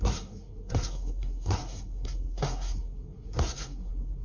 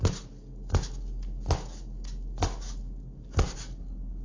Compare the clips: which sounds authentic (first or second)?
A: second